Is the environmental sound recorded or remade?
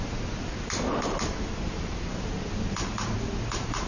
recorded